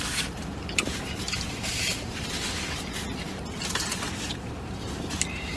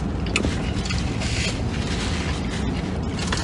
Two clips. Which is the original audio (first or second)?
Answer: second